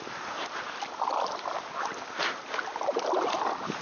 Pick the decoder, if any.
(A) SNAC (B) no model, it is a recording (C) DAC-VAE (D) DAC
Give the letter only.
B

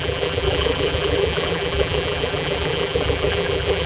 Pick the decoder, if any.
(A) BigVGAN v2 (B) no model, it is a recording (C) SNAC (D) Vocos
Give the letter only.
A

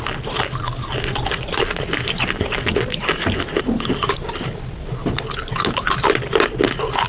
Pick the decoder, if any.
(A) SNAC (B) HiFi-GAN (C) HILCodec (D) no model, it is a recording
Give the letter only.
D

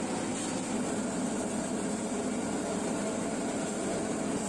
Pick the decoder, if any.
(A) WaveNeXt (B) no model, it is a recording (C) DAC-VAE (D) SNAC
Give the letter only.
B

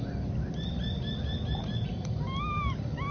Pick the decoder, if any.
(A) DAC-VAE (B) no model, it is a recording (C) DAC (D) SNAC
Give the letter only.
B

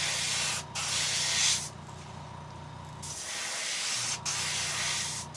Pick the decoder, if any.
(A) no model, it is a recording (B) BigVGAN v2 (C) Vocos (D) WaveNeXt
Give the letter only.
A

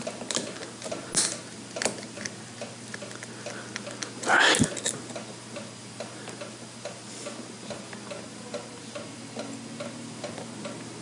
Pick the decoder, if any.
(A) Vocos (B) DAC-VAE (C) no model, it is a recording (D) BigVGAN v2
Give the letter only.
C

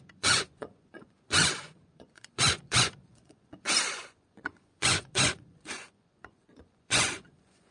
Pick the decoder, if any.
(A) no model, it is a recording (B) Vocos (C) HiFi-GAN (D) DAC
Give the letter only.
B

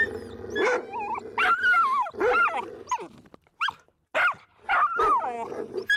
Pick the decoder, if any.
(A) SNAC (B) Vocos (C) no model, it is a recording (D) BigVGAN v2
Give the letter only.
C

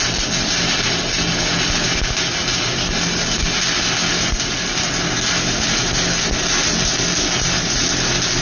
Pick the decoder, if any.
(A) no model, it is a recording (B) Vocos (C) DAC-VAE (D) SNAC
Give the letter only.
A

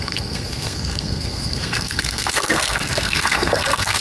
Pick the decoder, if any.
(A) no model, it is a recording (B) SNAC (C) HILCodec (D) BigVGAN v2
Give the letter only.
B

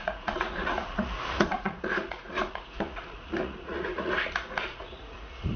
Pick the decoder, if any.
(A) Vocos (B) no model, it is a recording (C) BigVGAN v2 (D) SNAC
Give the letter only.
A